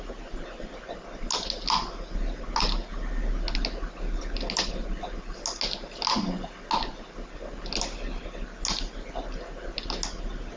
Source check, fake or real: real